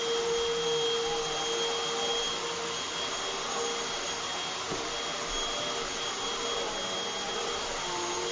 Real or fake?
real